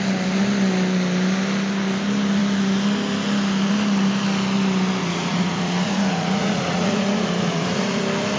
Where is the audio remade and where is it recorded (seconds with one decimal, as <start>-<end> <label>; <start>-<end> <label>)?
0.0-5.0 recorded; 5.0-8.0 remade; 8.0-8.4 recorded